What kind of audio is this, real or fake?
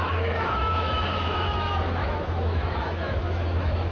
fake